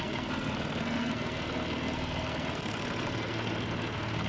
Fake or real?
fake